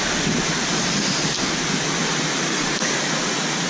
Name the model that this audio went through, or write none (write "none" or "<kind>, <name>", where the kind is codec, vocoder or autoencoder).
none